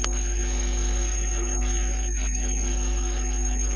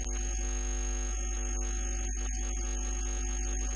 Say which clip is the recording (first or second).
second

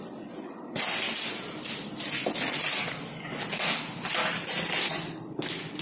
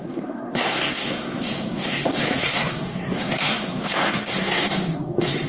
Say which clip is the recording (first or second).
first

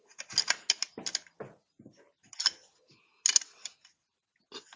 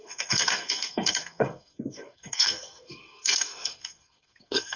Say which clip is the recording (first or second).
first